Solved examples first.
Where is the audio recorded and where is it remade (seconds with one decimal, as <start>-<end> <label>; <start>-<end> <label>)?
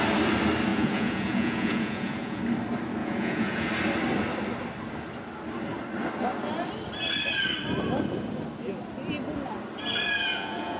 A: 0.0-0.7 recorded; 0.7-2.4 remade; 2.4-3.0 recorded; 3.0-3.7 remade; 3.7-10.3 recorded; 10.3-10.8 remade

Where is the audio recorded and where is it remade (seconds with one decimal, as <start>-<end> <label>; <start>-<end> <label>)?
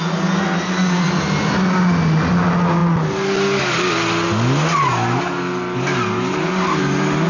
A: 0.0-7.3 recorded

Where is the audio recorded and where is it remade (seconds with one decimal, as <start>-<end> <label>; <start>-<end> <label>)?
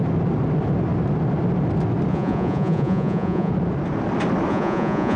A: 0.0-2.1 recorded; 2.1-3.5 remade; 3.5-4.5 recorded; 4.5-5.2 remade